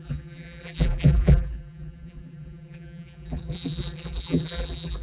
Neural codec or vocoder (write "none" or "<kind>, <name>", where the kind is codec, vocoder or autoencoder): vocoder, BigVGAN v2